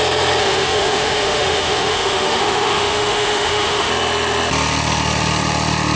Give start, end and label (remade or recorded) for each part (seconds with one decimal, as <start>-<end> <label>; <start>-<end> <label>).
0.0-0.4 recorded; 0.4-3.9 remade; 3.9-6.0 recorded